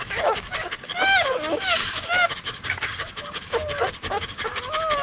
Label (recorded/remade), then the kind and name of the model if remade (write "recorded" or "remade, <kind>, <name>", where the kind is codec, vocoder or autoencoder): remade, codec, DAC